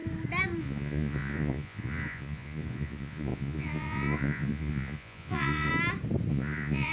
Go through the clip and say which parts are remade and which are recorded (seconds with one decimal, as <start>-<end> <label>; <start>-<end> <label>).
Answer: 0.0-0.6 recorded; 0.6-5.7 remade; 5.7-6.3 recorded; 6.3-6.9 remade

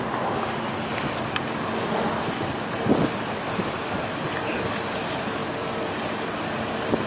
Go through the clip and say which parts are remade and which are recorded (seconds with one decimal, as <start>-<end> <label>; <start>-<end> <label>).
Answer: 0.0-7.1 recorded

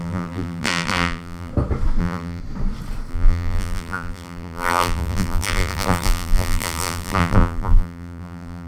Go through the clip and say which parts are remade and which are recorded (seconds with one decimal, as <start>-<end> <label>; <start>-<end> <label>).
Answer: 0.0-1.5 remade; 1.5-2.0 recorded; 2.0-2.4 remade; 2.4-3.1 recorded; 3.1-8.7 remade

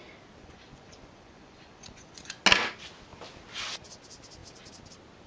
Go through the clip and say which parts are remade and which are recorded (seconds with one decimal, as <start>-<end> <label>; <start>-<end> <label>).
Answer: 0.0-0.4 recorded; 0.4-2.4 remade; 2.4-5.3 recorded

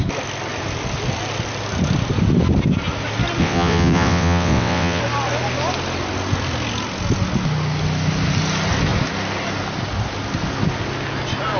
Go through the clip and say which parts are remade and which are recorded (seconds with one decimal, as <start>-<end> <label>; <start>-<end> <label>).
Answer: 0.0-3.4 recorded; 3.4-5.0 remade; 5.0-11.6 recorded

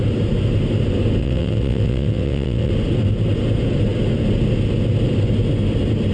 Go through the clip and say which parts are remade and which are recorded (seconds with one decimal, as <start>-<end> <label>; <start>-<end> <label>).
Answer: 0.0-1.2 recorded; 1.2-2.7 remade; 2.7-6.1 recorded